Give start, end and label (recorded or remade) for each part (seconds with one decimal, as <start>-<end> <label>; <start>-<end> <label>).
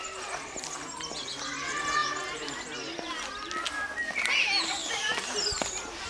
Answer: 0.0-4.8 recorded; 4.8-6.1 remade